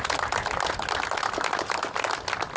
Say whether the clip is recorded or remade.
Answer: recorded